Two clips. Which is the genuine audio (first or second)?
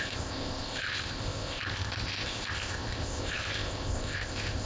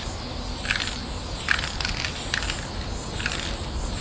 second